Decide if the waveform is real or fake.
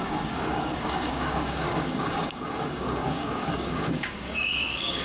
fake